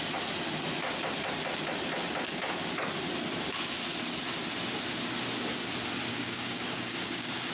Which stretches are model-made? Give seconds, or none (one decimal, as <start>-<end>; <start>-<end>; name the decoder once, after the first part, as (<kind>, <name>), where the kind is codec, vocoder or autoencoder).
6.1-7.5 (codec, DAC)